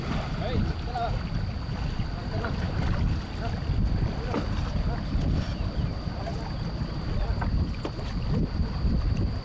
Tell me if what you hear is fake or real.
real